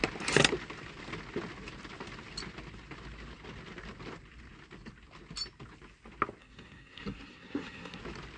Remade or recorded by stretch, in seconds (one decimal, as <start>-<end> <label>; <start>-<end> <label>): 0.0-6.4 recorded; 6.4-8.0 remade; 8.0-8.4 recorded

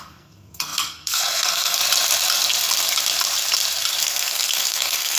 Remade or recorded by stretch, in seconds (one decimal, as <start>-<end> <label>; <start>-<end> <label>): 0.0-1.8 remade; 1.8-4.0 recorded; 4.0-5.2 remade